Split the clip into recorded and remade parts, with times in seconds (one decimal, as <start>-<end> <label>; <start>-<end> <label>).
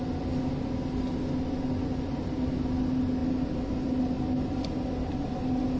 0.0-5.8 recorded